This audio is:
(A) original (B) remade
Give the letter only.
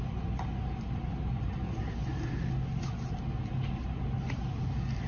A